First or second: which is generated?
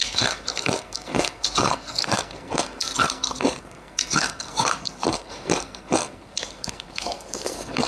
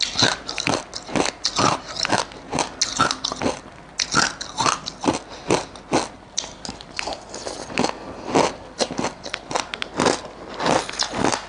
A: first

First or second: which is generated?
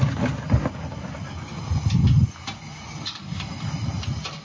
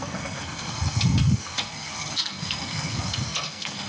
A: second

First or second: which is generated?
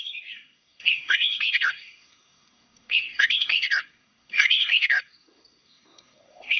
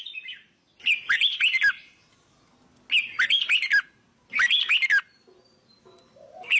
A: first